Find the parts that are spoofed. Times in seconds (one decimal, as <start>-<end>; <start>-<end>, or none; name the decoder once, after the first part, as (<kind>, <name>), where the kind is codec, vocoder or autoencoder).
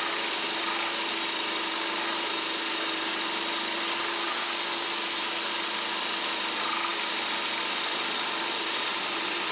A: none